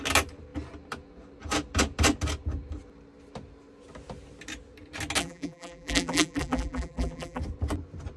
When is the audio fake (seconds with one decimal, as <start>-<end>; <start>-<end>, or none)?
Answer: 5.2-7.4